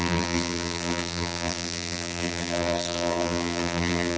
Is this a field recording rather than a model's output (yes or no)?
no